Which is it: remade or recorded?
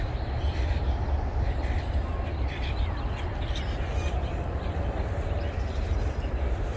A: remade